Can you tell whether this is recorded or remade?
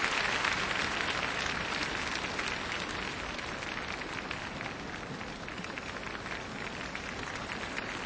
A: recorded